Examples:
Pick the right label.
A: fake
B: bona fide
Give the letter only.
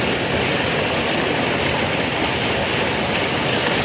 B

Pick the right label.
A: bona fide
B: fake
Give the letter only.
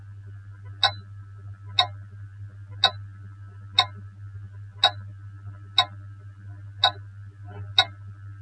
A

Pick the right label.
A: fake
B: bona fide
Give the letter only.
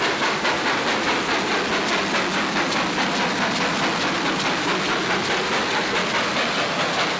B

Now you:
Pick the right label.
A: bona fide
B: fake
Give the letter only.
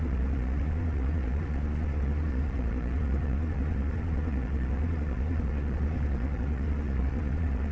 B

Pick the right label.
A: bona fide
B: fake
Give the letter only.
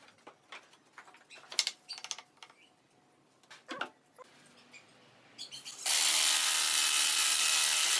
A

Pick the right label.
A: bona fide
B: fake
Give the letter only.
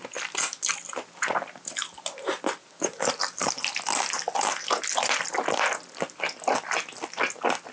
A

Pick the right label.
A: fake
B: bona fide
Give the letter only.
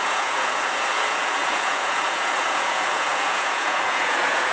A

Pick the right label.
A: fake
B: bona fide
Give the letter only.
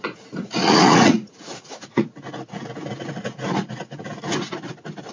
A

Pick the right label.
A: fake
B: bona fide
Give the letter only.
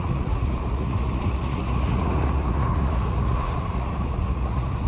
A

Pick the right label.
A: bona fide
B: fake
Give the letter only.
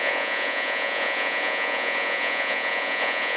B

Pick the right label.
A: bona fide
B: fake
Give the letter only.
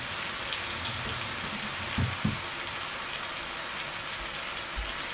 A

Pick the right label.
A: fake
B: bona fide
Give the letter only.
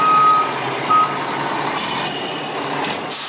B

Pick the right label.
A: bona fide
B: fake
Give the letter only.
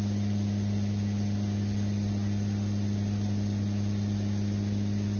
A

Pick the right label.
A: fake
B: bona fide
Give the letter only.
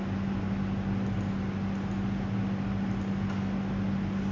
B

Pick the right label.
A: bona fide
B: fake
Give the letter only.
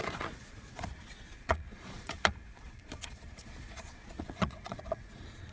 B